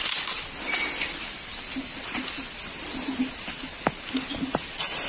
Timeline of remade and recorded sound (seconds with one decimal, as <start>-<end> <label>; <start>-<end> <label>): 0.0-1.5 recorded; 1.5-3.7 remade; 3.7-4.3 recorded; 4.3-5.1 remade